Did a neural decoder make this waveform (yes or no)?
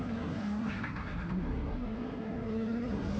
yes